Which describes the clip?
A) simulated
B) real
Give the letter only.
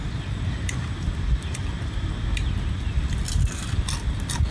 B